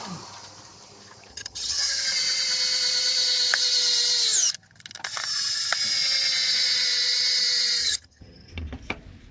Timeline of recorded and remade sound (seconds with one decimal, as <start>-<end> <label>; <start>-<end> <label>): 0.0-1.3 recorded; 1.3-2.0 remade; 2.0-7.8 recorded; 7.8-8.5 remade; 8.5-9.3 recorded